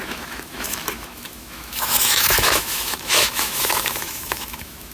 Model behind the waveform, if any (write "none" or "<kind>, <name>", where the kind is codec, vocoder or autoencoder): autoencoder, DAC-VAE